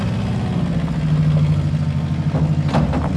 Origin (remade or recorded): recorded